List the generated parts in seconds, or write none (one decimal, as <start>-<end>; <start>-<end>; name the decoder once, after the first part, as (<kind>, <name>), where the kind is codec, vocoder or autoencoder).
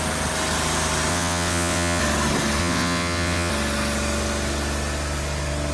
1.1-2.0 (vocoder, WaveNeXt); 2.6-3.5